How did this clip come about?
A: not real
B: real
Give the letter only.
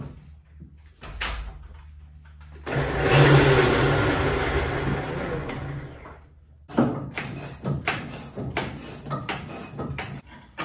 B